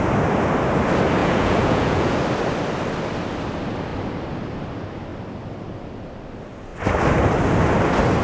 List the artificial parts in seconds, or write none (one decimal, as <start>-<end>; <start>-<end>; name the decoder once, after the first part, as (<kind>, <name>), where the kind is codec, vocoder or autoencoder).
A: 1.2-2.2 (vocoder, Vocos)